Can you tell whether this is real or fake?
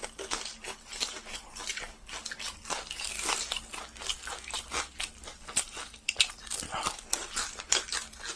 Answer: real